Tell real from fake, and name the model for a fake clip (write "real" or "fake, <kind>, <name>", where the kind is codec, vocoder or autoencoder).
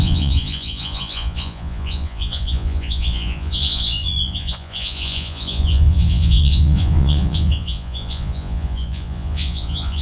fake, vocoder, Vocos